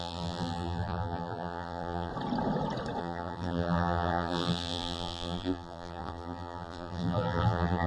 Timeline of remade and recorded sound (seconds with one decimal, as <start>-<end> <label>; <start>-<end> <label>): 0.0-2.1 remade; 2.1-3.0 recorded; 3.0-7.9 remade